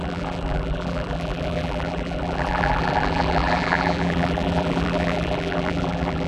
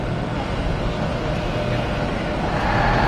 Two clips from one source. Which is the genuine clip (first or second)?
second